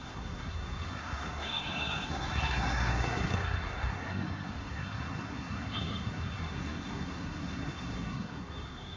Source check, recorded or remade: remade